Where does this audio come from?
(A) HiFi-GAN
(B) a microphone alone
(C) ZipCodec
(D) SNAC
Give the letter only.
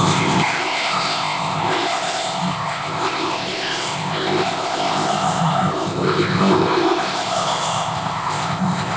C